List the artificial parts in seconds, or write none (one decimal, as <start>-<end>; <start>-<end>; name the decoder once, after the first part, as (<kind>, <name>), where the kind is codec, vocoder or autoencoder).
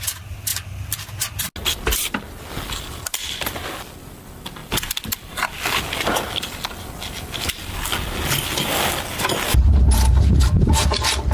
none